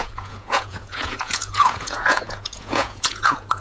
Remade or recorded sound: remade